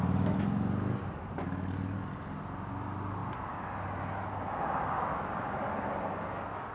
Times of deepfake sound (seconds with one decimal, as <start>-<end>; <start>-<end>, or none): none